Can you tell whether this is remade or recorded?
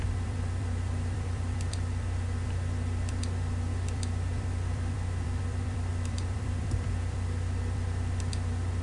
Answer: remade